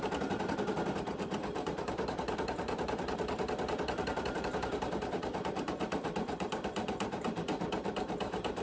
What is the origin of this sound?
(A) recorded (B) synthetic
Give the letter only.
B